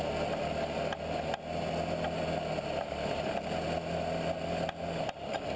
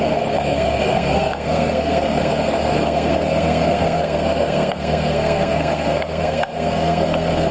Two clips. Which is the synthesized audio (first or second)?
second